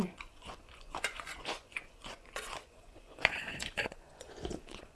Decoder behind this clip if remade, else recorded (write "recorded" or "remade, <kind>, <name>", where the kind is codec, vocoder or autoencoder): remade, vocoder, Vocos